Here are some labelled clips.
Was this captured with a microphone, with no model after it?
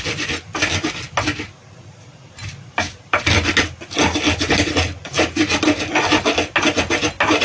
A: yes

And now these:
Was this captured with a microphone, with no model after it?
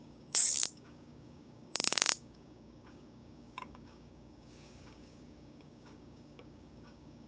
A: no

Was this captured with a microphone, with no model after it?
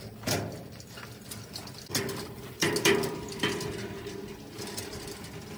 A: yes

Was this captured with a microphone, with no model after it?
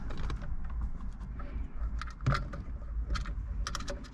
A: yes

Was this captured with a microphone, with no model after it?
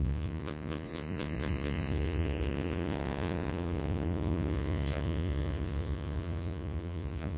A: no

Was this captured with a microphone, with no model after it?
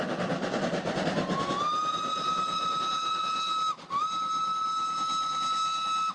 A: yes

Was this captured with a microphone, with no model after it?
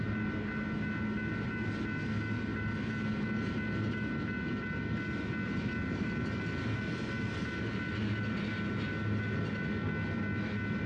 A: yes